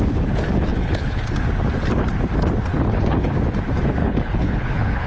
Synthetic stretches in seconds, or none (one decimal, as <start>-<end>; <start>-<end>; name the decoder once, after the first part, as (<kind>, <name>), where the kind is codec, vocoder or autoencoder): 0.7-1.2 (codec, HILCodec); 2.7-3.3; 4.0-5.1